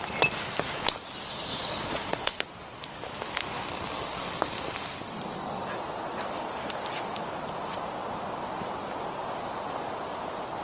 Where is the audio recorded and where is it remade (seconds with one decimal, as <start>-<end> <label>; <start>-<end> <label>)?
0.0-1.5 recorded; 1.5-2.4 remade; 2.4-10.6 recorded